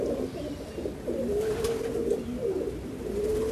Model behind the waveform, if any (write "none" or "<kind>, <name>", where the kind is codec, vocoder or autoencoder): none